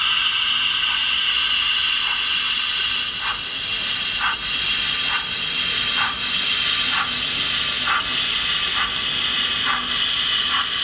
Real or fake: real